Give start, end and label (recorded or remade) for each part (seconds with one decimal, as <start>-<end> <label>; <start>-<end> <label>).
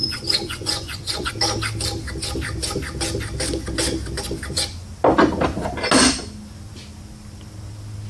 0.0-1.3 remade; 1.3-8.1 recorded